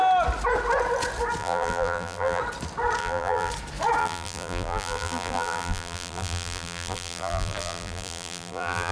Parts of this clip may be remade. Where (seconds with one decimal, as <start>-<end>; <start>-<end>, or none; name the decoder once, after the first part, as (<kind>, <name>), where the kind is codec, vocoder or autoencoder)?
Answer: 1.4-2.4 (vocoder, BigVGAN v2); 3.0-3.5; 4.0-8.9